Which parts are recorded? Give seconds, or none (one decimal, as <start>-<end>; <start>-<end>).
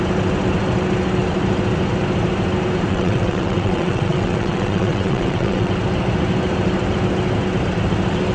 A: 0.0-2.9; 5.7-8.3